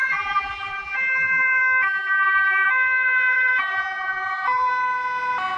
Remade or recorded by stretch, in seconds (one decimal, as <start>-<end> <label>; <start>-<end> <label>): 0.0-4.7 remade; 4.7-5.6 recorded

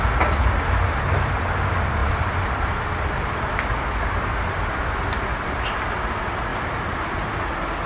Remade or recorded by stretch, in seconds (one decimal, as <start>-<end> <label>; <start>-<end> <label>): 0.0-2.0 recorded; 2.0-3.7 remade; 3.7-7.9 recorded

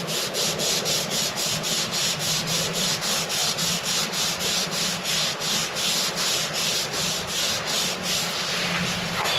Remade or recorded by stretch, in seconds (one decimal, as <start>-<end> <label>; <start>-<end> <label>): 0.0-2.0 recorded; 2.0-2.9 remade; 2.9-3.4 recorded; 3.4-4.4 remade; 4.4-9.4 recorded

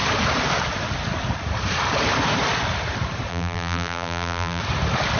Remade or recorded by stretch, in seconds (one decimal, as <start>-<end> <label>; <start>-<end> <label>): 0.0-3.3 recorded; 3.3-4.6 remade; 4.6-5.2 recorded

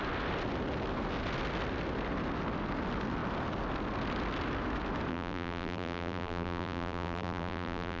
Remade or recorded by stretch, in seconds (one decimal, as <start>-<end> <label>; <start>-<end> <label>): 0.0-5.1 recorded; 5.1-8.0 remade